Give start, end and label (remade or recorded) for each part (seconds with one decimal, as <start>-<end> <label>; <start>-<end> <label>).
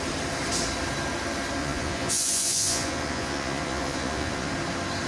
0.0-1.6 recorded; 1.6-4.5 remade; 4.5-5.1 recorded